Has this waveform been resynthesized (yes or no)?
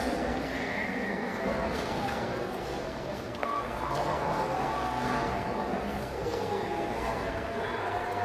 yes